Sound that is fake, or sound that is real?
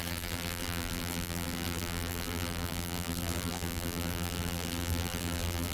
fake